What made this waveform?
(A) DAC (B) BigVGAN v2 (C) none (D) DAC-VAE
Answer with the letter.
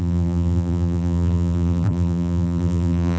B